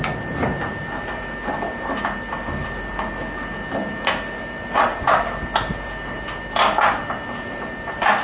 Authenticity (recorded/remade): recorded